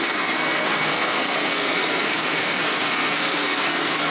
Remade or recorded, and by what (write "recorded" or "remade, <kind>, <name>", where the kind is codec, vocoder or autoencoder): remade, codec, SNAC